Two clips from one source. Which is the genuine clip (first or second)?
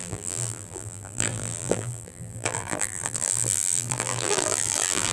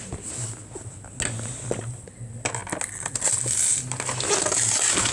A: second